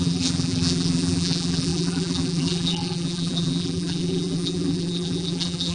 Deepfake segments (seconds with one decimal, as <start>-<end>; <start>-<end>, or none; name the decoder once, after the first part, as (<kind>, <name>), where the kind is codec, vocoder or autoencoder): 0.0-5.7 (vocoder, BigVGAN v2)